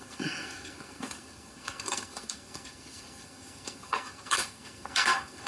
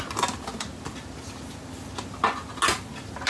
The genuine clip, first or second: second